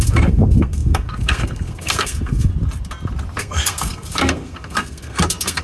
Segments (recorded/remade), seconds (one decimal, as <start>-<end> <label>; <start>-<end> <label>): 0.0-2.5 remade; 2.5-3.4 recorded; 3.4-5.6 remade